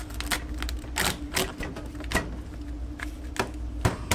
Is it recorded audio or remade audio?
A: recorded